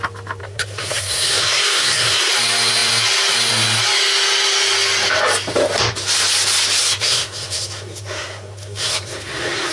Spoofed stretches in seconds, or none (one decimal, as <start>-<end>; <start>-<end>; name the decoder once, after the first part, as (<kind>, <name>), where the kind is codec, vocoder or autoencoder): 0.4-2.3 (codec, SNAC); 6.8-9.7